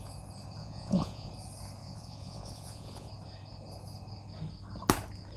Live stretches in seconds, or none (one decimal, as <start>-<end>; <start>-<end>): 0.0-0.6; 1.3-1.8; 3.1-5.4